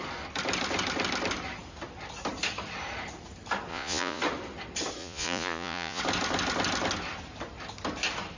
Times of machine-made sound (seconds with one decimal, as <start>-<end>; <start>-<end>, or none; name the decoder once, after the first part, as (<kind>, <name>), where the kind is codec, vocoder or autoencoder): 3.7-4.2 (vocoder, Vocos); 5.0-6.0